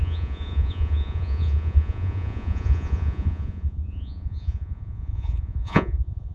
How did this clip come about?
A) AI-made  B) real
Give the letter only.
A